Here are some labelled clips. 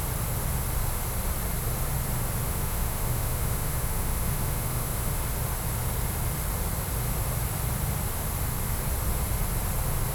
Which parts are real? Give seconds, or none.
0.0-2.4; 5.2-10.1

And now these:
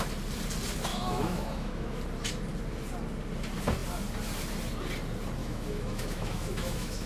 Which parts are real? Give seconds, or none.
0.0-0.9; 2.0-5.4

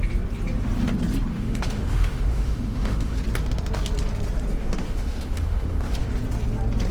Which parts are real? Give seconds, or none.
0.0-1.3; 3.2-4.5; 6.1-6.9

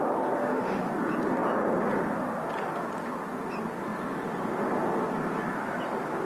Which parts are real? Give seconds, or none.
0.0-0.4; 0.9-6.3

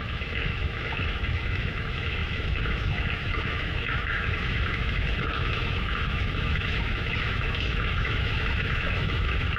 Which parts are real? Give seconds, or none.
none